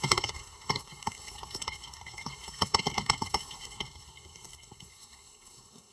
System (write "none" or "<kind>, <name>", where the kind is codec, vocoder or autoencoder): codec, SNAC